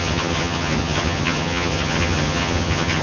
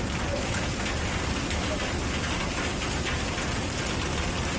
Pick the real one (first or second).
second